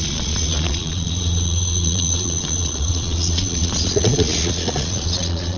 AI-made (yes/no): yes